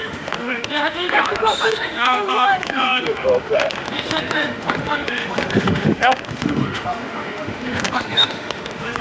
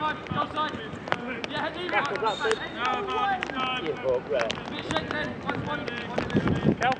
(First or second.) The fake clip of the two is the first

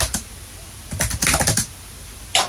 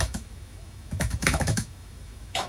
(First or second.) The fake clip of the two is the second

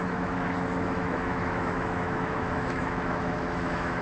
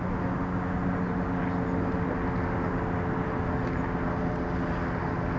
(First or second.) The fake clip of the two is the first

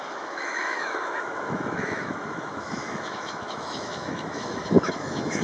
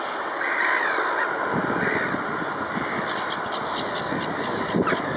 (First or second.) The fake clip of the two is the first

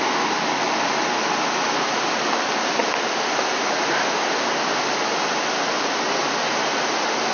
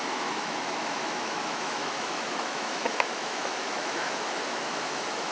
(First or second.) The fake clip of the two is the second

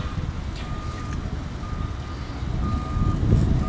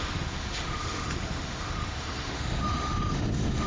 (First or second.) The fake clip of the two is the second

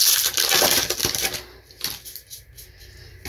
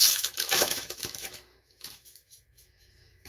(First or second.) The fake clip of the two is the second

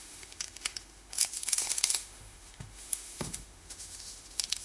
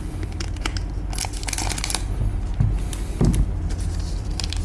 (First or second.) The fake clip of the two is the first